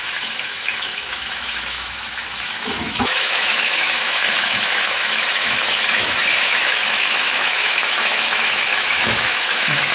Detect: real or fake fake